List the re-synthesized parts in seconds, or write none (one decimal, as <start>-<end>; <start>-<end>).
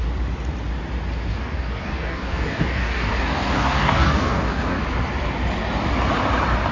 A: 1.3-4.8